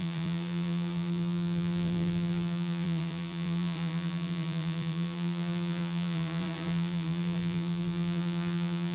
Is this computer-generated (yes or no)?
yes